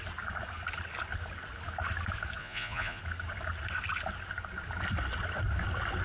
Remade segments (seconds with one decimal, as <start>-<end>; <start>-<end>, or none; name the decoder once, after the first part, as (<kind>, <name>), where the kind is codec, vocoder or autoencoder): 2.4-3.0 (vocoder, Vocos)